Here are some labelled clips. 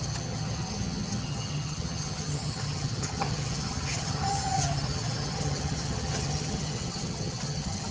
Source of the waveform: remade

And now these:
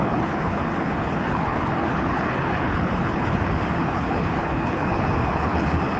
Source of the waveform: remade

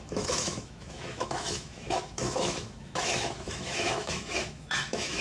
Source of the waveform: remade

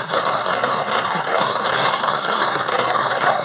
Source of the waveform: remade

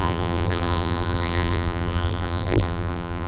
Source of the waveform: remade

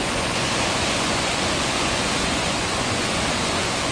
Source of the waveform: remade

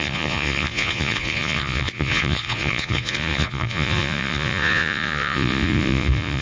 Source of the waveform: remade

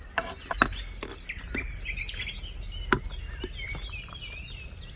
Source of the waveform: recorded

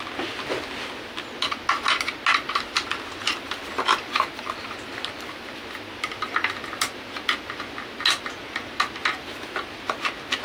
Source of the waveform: recorded